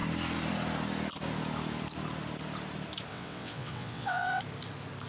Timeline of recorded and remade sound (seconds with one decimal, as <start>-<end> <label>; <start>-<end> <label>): 0.0-3.1 recorded; 3.1-4.4 remade; 4.4-5.1 recorded